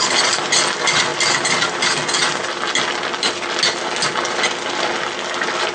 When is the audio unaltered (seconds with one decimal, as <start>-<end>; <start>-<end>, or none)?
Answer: 0.0-5.7